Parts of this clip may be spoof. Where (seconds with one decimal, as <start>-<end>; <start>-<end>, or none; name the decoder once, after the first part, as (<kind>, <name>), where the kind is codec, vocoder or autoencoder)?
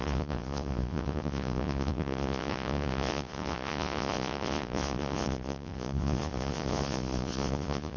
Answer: 0.0-8.0 (vocoder, Vocos)